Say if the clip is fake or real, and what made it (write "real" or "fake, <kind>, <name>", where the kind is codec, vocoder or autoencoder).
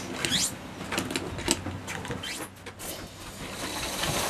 real